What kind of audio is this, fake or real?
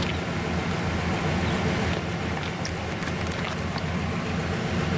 real